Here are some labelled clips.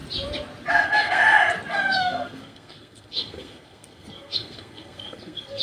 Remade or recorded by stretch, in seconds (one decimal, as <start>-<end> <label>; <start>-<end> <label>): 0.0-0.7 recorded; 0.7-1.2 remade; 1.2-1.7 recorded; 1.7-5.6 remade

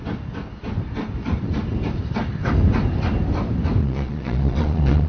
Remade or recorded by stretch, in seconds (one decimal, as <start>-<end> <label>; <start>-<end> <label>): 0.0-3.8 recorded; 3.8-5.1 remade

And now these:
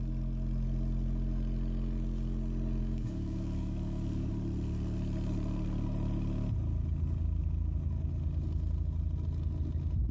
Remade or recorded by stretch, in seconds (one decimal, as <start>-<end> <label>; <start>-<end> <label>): 0.0-2.8 recorded; 2.8-4.3 remade; 4.3-10.1 recorded

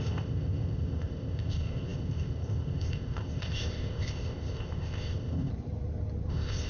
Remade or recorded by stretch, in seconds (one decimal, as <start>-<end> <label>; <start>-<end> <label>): 0.0-5.5 remade; 5.5-6.3 recorded; 6.3-6.7 remade

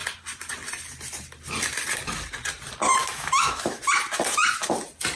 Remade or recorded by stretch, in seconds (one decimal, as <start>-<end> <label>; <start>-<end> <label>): 0.0-3.0 recorded; 3.0-3.8 remade; 3.8-5.2 recorded